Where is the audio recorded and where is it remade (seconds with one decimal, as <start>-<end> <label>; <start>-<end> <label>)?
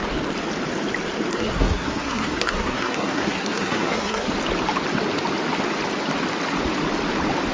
0.0-1.3 recorded; 1.3-4.3 remade; 4.3-7.5 recorded